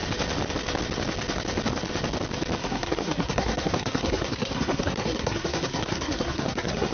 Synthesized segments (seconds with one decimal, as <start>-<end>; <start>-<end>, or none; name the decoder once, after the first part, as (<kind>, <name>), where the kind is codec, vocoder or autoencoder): 2.6-6.9 (codec, SNAC)